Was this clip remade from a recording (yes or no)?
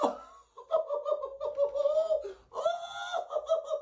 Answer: no